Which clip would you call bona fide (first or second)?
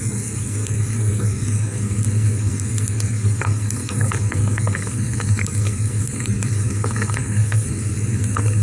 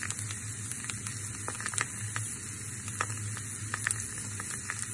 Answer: second